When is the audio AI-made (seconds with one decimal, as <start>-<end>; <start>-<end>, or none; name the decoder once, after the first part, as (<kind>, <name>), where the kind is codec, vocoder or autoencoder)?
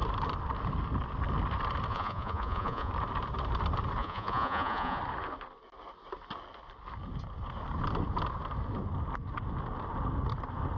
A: 1.9-2.9 (vocoder, Vocos); 4.0-5.0